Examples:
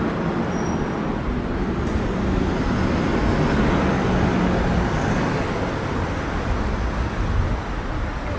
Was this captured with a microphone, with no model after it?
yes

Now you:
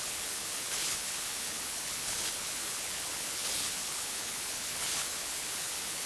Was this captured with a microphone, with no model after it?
no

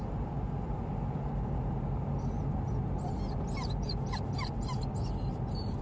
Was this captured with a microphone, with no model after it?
yes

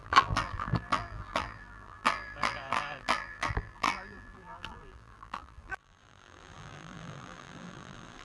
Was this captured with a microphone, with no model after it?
no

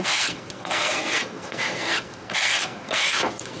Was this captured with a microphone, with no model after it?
no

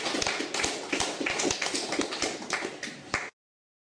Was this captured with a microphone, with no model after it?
yes